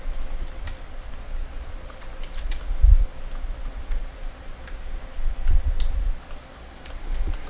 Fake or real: real